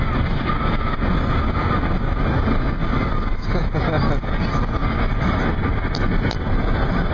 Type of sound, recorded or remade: recorded